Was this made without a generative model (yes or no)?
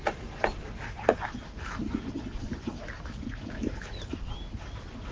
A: yes